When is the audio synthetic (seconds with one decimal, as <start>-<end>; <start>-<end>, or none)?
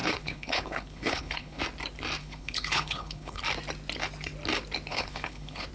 0.0-1.6; 2.2-3.4; 4.9-5.7